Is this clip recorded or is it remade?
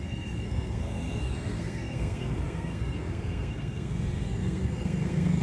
remade